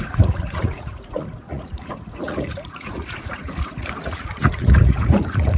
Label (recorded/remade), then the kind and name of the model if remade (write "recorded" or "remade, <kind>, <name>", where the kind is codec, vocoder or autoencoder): remade, vocoder, Vocos